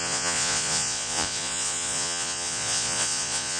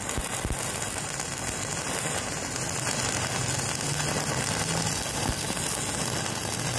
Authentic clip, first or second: second